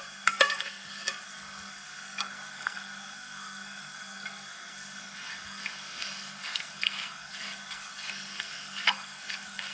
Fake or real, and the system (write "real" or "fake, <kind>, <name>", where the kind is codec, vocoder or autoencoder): fake, codec, SNAC